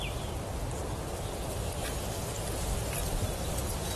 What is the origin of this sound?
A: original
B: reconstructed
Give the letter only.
A